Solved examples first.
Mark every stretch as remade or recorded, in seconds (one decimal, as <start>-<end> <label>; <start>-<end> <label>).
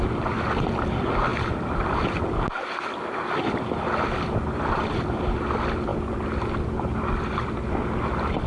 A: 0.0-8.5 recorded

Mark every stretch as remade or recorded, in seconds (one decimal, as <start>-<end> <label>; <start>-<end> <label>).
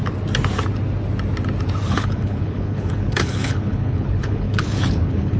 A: 0.0-1.9 recorded; 1.9-5.4 remade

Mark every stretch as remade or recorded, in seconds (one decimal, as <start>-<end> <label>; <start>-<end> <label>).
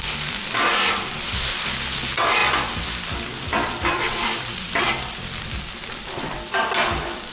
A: 0.0-7.3 remade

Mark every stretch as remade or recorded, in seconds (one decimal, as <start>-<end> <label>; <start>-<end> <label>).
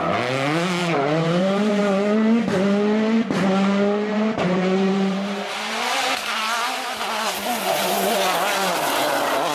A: 0.0-0.8 recorded; 0.8-1.8 remade; 1.8-4.1 recorded; 4.1-6.4 remade; 6.4-9.5 recorded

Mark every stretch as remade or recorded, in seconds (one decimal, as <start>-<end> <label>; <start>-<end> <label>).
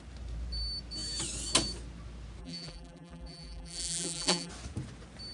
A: 0.0-2.4 recorded; 2.4-4.5 remade; 4.5-5.3 recorded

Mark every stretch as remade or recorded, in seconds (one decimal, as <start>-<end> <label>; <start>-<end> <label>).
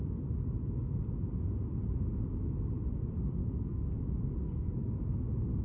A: 0.0-3.4 recorded; 3.4-4.0 remade; 4.0-4.4 recorded; 4.4-5.0 remade; 5.0-5.6 recorded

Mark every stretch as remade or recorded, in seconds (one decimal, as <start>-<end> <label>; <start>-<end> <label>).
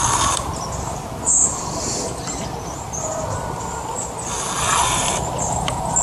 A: 0.0-6.0 recorded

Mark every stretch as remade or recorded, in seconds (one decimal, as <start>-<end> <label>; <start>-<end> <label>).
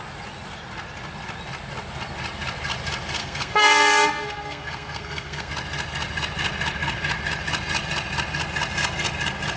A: 0.0-3.2 recorded; 3.2-5.5 remade; 5.5-9.6 recorded